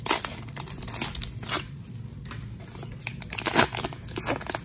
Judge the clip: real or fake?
real